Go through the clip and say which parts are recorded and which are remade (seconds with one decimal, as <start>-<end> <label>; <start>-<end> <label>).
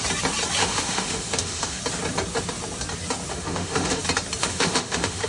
0.0-0.6 recorded; 0.6-1.8 remade; 1.8-3.3 recorded; 3.3-4.0 remade; 4.0-4.4 recorded; 4.4-5.3 remade